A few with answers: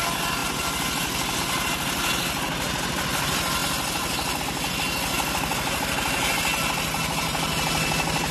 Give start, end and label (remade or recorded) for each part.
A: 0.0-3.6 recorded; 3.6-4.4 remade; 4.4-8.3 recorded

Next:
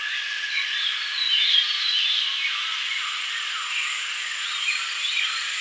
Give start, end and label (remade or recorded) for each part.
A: 0.0-5.6 recorded

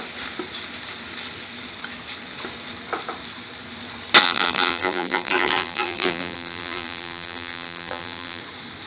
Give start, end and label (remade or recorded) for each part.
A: 0.0-4.2 recorded; 4.2-8.4 remade; 8.4-8.9 recorded

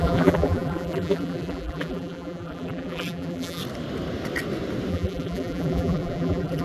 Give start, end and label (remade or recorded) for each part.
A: 0.0-3.6 remade; 3.6-4.9 recorded; 4.9-6.6 remade

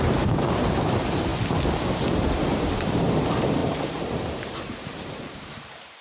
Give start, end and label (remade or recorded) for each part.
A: 0.0-1.3 remade; 1.3-2.5 recorded; 2.5-6.0 remade

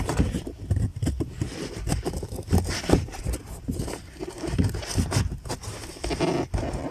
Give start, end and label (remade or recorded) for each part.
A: 0.0-0.9 recorded; 0.9-3.1 remade; 3.1-6.9 recorded

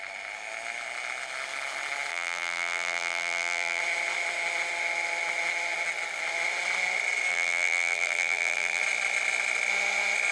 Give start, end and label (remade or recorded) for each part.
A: 0.0-2.1 recorded; 2.1-3.8 remade; 3.8-7.3 recorded; 7.3-8.8 remade; 8.8-10.3 recorded

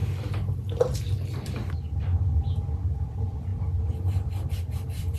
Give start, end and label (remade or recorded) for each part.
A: 0.0-1.7 recorded; 1.7-3.5 remade; 3.5-4.5 recorded; 4.5-5.2 remade